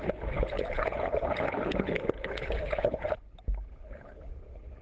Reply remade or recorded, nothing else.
remade